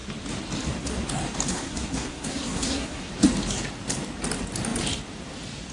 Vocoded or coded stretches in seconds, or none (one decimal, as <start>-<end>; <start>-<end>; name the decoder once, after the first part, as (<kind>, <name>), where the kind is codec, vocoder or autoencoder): 1.5-3.1 (codec, SNAC)